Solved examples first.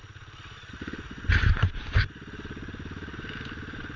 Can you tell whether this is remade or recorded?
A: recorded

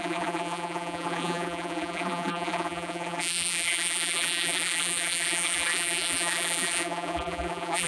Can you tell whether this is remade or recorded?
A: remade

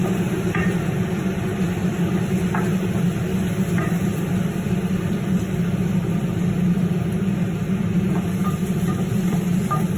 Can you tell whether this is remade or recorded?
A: remade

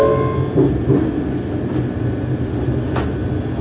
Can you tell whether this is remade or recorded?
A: recorded